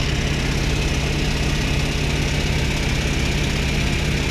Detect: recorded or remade recorded